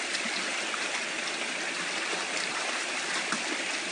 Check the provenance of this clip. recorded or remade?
recorded